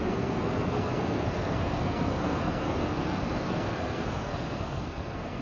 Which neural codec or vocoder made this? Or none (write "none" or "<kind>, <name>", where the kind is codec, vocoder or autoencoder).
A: codec, SNAC